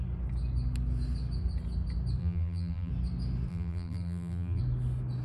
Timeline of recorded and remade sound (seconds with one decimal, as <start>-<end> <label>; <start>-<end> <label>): 0.0-2.2 recorded; 2.2-2.9 remade; 2.9-3.5 recorded; 3.5-4.6 remade; 4.6-5.2 recorded